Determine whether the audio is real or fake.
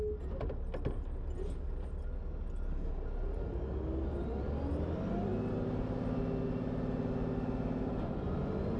real